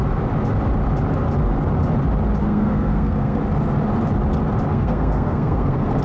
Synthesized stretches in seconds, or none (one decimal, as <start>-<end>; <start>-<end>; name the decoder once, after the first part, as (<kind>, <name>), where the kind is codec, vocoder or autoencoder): 2.4-3.4 (codec, SNAC); 4.7-6.0

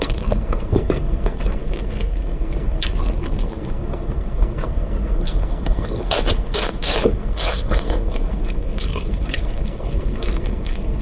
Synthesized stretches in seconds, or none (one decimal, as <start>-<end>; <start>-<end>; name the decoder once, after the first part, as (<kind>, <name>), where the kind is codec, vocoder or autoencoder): 0.0-11.0 (codec, SNAC)

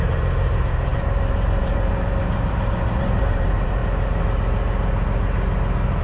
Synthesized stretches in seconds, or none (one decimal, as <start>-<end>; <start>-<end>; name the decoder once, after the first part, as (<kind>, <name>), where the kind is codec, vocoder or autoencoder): 0.0-3.8 (vocoder, BigVGAN v2)

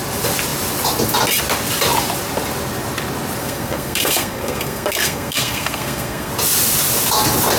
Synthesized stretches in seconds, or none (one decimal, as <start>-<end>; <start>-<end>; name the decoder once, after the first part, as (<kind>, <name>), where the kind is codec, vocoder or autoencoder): 3.4-6.3 (codec, SNAC)

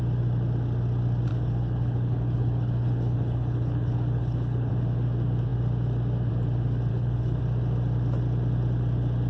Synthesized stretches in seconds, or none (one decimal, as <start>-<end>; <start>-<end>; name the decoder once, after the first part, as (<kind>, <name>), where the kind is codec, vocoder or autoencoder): 1.3-4.7 (codec, HILCodec); 6.9-7.4